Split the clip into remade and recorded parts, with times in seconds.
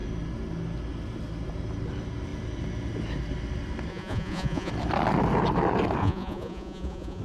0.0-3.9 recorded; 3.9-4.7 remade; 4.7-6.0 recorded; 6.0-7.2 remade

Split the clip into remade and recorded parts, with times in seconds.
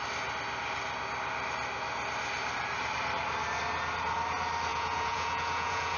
0.0-4.7 recorded; 4.7-6.0 remade